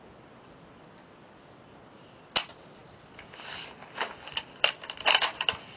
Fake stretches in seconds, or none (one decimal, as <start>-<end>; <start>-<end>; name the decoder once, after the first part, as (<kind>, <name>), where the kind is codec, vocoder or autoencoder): none